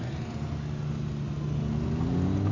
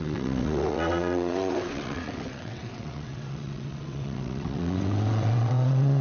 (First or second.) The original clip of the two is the first